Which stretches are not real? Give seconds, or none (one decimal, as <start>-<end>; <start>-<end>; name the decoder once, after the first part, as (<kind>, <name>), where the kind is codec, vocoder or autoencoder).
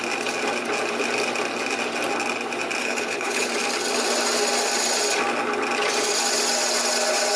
2.8-3.5 (codec, HILCodec)